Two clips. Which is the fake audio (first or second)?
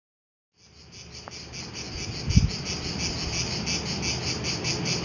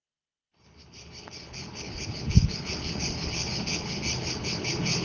second